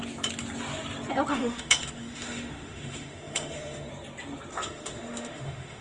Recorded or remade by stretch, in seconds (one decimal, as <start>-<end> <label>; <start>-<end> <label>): 0.0-1.3 recorded; 1.3-3.9 remade; 3.9-4.5 recorded; 4.5-5.8 remade